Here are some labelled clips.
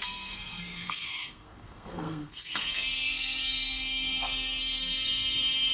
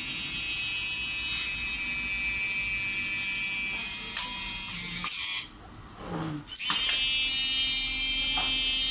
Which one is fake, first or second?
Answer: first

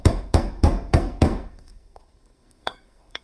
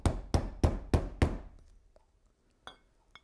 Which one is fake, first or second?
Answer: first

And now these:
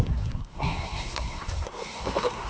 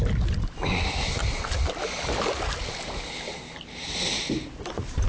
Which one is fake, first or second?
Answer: first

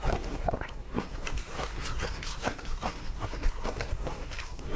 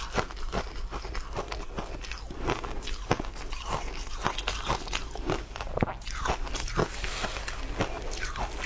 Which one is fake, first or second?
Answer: first